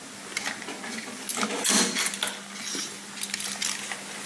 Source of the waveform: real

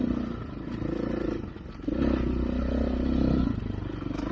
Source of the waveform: real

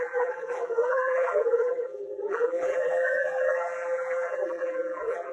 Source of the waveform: fake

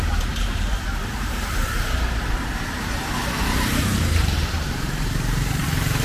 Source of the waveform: fake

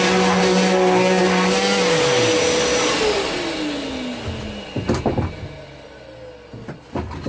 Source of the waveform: real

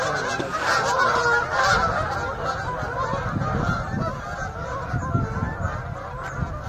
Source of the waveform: real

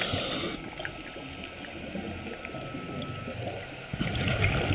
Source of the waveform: real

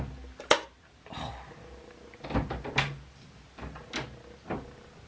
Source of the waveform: real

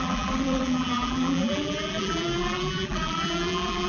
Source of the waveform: fake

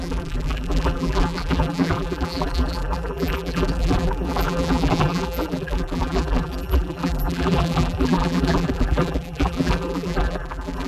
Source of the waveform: fake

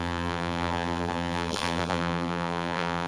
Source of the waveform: fake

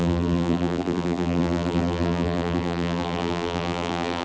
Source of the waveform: fake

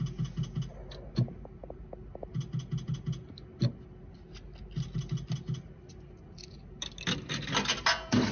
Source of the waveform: real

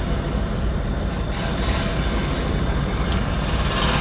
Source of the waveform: real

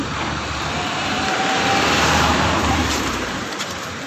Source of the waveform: fake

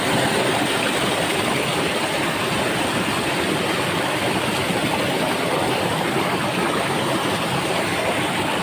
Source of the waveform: real